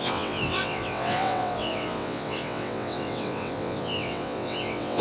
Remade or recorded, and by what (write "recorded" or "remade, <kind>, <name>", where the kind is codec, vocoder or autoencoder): remade, vocoder, WaveNeXt